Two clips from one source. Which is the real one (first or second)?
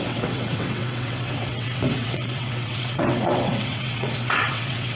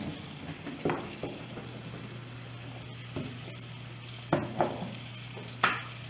second